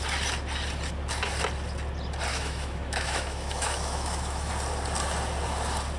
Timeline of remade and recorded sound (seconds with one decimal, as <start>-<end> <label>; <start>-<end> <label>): 0.0-2.3 recorded; 2.3-4.5 remade; 4.5-6.0 recorded